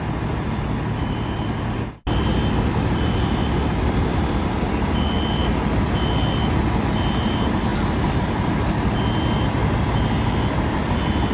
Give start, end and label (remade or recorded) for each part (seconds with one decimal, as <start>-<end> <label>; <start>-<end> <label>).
0.0-11.3 recorded